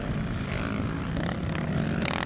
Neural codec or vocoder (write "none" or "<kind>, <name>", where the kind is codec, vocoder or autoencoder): none